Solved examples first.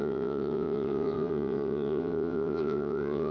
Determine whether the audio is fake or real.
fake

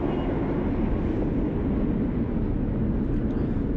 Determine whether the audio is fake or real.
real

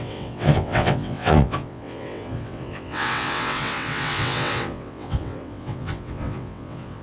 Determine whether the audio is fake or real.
fake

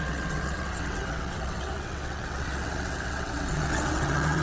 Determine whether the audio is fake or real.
fake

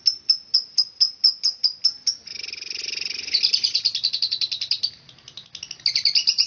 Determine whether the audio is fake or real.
real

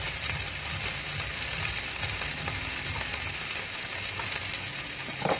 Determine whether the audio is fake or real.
real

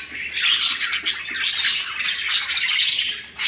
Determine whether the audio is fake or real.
real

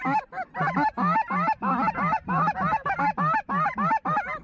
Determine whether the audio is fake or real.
real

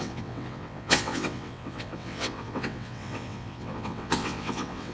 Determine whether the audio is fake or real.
fake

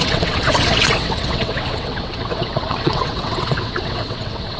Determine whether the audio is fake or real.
fake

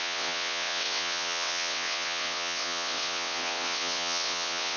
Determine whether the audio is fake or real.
fake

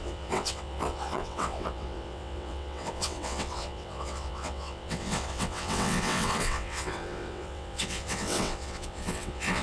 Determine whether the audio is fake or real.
fake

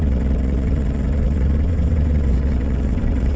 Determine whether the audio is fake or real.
fake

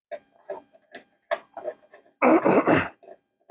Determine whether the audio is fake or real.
real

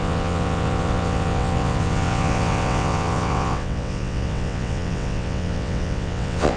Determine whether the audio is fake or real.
fake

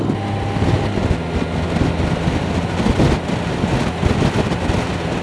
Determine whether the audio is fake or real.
real